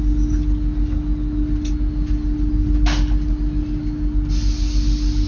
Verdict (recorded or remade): recorded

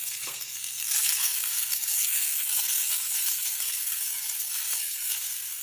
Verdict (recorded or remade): remade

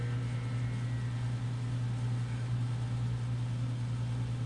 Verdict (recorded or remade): recorded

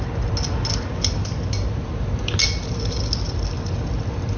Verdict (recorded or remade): recorded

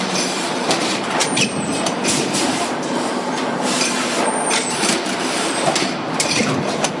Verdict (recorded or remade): remade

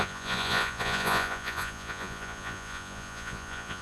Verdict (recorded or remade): remade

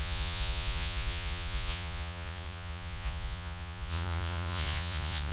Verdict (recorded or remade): remade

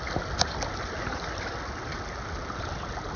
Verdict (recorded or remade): recorded